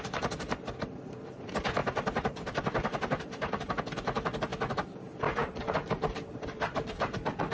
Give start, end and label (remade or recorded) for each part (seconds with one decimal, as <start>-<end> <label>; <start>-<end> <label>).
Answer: 0.0-7.5 remade